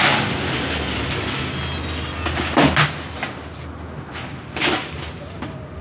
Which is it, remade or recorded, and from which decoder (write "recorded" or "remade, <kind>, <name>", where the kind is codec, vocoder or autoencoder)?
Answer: recorded